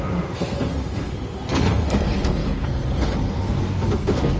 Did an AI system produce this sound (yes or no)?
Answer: yes